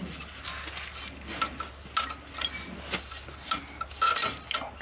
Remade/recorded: recorded